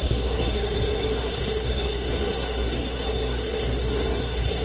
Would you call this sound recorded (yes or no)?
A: no